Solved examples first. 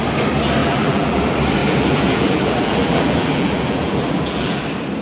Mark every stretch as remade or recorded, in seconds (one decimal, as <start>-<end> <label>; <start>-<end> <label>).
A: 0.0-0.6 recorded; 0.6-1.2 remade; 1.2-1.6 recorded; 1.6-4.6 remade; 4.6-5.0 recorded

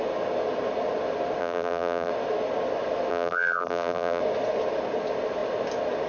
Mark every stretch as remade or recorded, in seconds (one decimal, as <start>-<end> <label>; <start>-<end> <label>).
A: 0.0-1.4 recorded; 1.4-2.1 remade; 2.1-3.1 recorded; 3.1-4.2 remade; 4.2-6.1 recorded

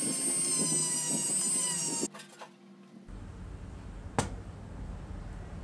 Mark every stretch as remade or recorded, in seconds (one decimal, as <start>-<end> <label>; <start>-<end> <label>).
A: 0.0-5.6 recorded

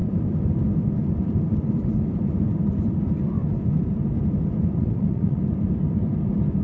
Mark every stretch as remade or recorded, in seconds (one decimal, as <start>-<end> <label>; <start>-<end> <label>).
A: 0.0-4.8 recorded; 4.8-5.4 remade; 5.4-6.6 recorded

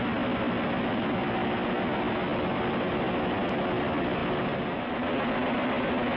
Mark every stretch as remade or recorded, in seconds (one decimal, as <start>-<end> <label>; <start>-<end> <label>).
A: 0.0-6.2 recorded

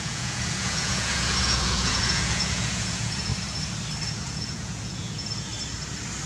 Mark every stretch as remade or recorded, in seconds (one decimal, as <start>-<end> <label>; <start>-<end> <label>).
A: 0.0-3.3 remade; 3.3-4.0 recorded; 4.0-5.5 remade; 5.5-6.3 recorded